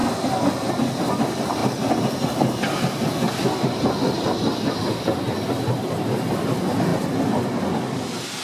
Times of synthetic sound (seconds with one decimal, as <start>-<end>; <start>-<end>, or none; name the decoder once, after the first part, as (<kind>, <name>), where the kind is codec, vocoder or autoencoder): none